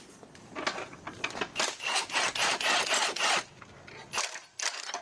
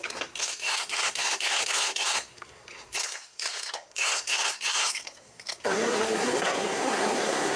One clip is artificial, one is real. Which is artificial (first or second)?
second